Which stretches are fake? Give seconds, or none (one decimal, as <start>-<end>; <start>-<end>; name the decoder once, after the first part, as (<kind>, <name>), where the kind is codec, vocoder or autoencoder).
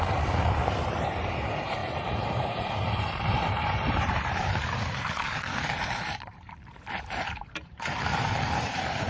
0.0-9.1 (vocoder, BigVGAN v2)